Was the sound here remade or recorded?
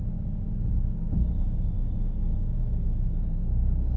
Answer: remade